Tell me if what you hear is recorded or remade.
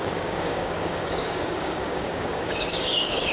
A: remade